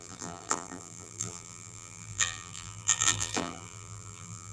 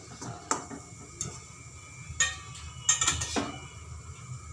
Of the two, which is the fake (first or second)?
first